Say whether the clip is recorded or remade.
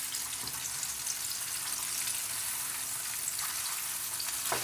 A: recorded